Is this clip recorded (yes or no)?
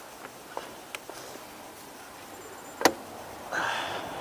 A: yes